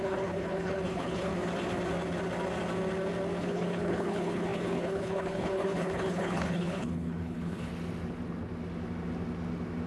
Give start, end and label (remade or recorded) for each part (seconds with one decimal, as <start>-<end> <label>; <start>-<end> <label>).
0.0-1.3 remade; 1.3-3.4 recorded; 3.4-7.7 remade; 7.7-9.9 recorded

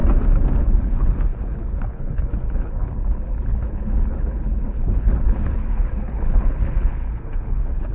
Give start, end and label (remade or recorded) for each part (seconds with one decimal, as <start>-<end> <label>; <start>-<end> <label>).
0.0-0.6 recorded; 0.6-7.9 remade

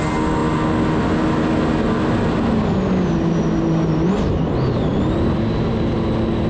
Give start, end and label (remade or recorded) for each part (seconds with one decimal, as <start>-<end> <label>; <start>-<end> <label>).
0.0-6.5 recorded

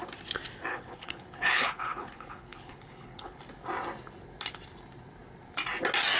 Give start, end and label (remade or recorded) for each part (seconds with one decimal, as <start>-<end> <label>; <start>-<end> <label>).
0.0-0.7 recorded; 0.7-3.4 remade; 3.4-6.2 recorded

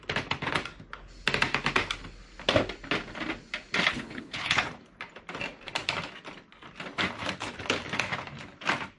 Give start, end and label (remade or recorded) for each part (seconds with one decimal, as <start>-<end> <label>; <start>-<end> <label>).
0.0-3.9 recorded; 3.9-4.7 remade; 4.7-9.0 recorded